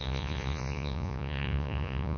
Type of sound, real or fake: fake